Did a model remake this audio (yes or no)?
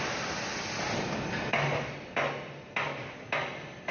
no